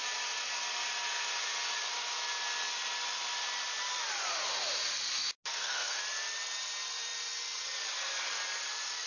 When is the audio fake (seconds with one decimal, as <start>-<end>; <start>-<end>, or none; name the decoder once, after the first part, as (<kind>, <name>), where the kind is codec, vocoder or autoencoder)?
5.5-6.0 (codec, SNAC)